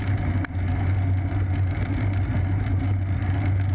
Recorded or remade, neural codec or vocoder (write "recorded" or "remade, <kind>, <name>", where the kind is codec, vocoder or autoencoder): recorded